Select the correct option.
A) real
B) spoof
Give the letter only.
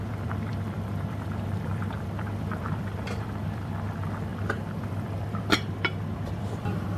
B